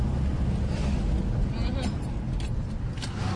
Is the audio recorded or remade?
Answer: recorded